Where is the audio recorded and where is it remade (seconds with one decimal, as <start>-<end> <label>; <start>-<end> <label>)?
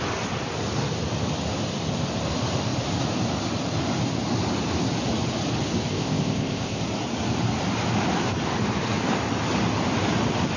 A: 0.0-5.9 recorded; 5.9-6.8 remade; 6.8-10.6 recorded